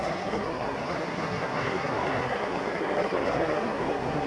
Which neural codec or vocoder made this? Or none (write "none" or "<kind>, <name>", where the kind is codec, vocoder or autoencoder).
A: codec, SNAC